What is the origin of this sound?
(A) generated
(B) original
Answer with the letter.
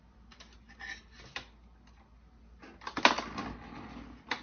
B